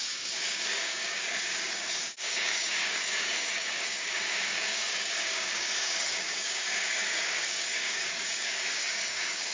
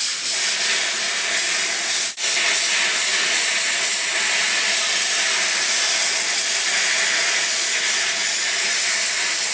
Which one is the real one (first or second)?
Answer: second